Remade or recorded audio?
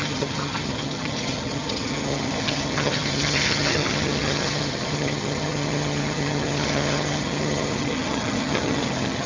remade